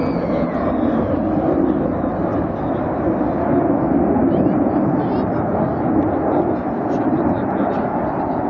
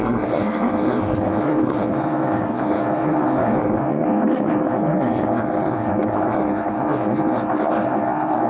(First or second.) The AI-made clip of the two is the second